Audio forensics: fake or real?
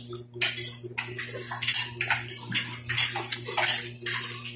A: real